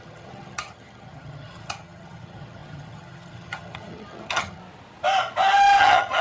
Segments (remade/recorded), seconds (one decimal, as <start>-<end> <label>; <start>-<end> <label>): 0.0-4.6 remade; 4.6-5.8 recorded; 5.8-6.2 remade